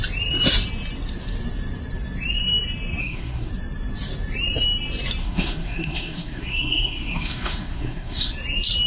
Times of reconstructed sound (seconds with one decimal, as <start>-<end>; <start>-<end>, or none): 3.0-3.5; 5.2-8.3